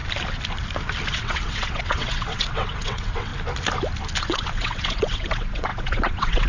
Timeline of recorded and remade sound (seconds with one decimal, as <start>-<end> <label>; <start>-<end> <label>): 0.0-1.1 recorded; 1.1-3.3 remade; 3.3-4.2 recorded; 4.2-6.5 remade